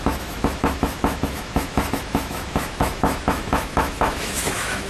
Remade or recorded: remade